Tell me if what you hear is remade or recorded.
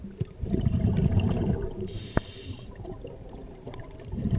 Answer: remade